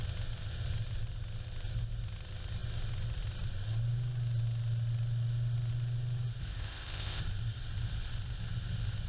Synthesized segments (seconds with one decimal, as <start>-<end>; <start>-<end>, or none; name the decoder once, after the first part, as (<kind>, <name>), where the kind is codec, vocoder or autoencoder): 6.4-7.2 (codec, ZipCodec)